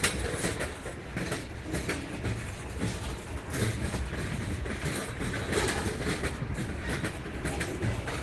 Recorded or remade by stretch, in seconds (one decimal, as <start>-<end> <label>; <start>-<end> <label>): 0.0-6.6 recorded; 6.6-7.3 remade; 7.3-8.2 recorded